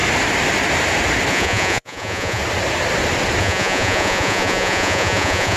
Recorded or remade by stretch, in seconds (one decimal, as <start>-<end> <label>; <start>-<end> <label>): 0.0-1.3 recorded; 1.3-2.4 remade; 2.4-3.4 recorded; 3.4-5.6 remade

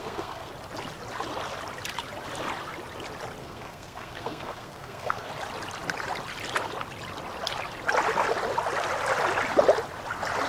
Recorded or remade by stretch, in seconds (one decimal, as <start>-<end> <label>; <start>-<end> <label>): 0.0-0.5 remade; 0.5-3.4 recorded; 3.4-5.3 remade; 5.3-10.5 recorded

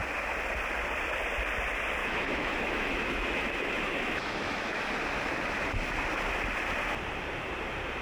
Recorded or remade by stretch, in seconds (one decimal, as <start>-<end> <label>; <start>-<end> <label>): 0.0-2.0 recorded; 2.0-4.9 remade; 4.9-8.0 recorded

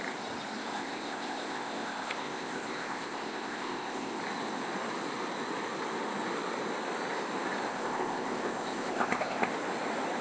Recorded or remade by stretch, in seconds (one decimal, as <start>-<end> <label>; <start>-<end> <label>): 0.0-0.6 recorded; 0.6-4.2 remade; 4.2-7.7 recorded; 7.7-9.5 remade; 9.5-10.2 recorded

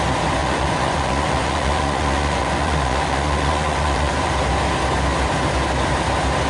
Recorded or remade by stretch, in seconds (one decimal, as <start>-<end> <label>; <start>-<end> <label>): 0.0-0.4 recorded; 0.4-4.3 remade; 4.3-6.5 recorded

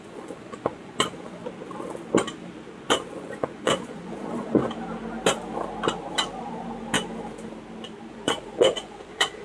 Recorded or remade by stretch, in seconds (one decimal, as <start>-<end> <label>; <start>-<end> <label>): 0.0-1.4 remade; 1.4-3.1 recorded; 3.1-4.6 remade; 4.6-8.1 recorded; 8.1-9.4 remade